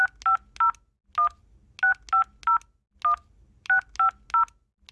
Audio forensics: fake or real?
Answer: real